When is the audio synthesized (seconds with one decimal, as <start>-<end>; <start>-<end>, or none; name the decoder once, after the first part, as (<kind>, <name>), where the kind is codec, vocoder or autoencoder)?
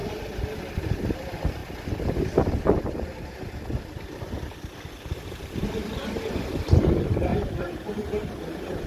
0.8-1.6 (vocoder, BigVGAN v2); 3.8-7.3; 7.9-8.9